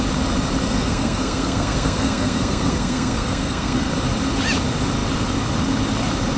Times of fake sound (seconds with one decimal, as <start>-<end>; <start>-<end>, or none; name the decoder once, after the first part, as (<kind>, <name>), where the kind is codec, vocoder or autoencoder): 0.6-3.9 (codec, SNAC)